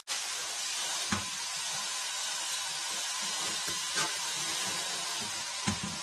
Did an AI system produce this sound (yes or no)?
no